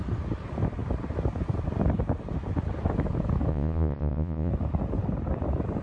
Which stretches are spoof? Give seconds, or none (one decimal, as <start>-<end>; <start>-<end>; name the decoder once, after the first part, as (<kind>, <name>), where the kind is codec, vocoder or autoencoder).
3.5-4.5 (vocoder, Vocos)